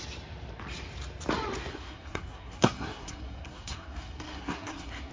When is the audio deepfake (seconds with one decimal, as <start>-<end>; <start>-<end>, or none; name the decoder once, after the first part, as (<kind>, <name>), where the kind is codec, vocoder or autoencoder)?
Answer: 1.7-5.1 (codec, SNAC)